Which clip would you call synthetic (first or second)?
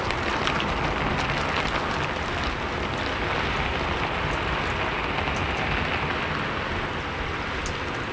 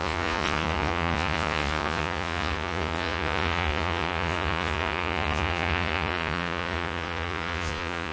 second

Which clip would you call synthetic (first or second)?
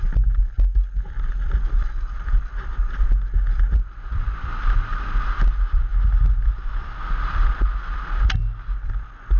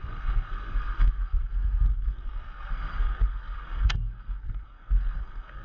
second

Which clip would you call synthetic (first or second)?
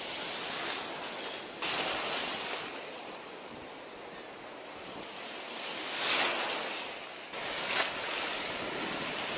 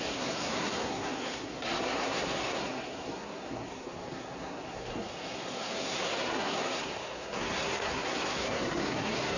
second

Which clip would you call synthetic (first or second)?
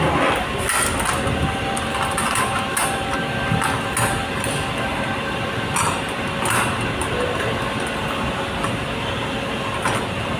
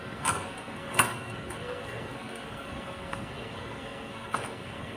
second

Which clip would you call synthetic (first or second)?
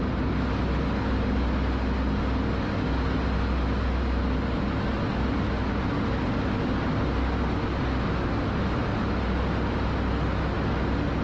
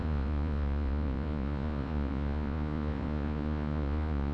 second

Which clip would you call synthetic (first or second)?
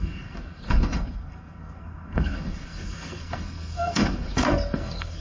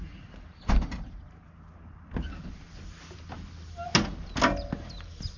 first